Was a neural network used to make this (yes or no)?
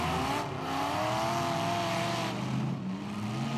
no